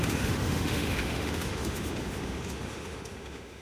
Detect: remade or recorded remade